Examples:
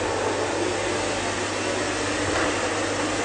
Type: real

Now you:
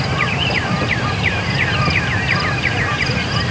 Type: fake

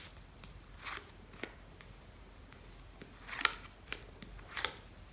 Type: real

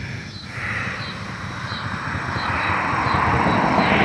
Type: real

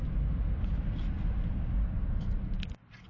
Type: real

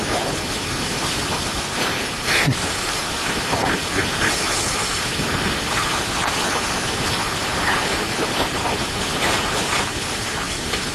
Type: real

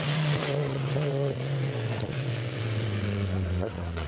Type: fake